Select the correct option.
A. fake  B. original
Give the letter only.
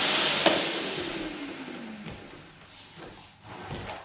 B